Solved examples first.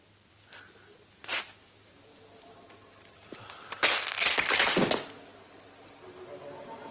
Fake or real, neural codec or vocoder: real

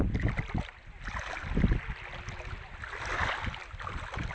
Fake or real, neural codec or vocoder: real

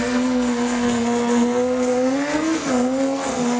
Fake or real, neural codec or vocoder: fake, codec, SNAC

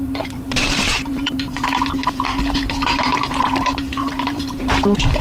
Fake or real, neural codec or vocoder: fake, vocoder, BigVGAN v2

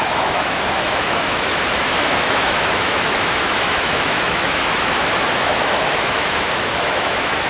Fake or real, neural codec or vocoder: fake, autoencoder, DAC-VAE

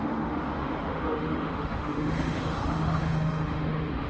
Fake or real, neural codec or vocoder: fake, autoencoder, DAC-VAE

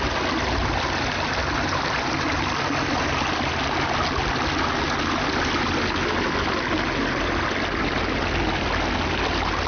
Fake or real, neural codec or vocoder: real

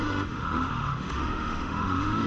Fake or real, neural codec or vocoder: fake, autoencoder, DAC-VAE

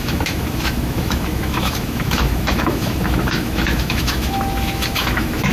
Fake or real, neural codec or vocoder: fake, autoencoder, DAC-VAE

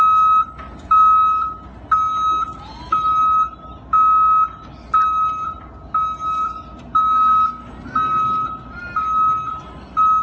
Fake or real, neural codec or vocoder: real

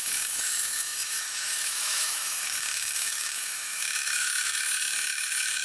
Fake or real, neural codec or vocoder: fake, autoencoder, DAC-VAE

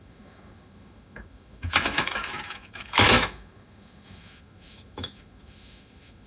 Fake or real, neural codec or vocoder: fake, autoencoder, DAC-VAE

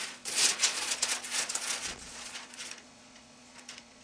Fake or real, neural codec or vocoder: fake, vocoder, Vocos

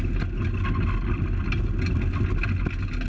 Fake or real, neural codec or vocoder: real